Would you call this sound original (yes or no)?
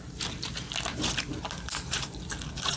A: yes